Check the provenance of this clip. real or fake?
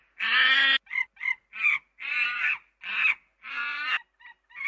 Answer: real